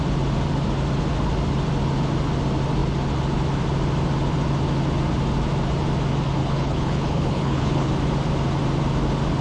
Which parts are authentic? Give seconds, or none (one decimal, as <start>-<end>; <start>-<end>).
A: 0.0-6.4; 7.9-9.4